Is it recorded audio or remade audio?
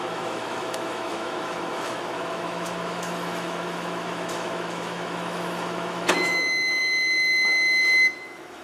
remade